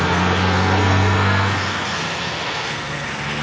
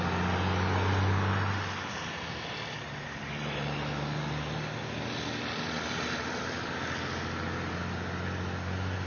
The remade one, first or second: first